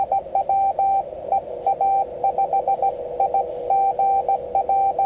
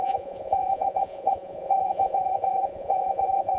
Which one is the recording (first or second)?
first